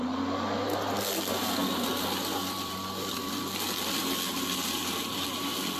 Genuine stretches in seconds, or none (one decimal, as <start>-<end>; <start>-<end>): 0.0-1.6; 3.4-5.8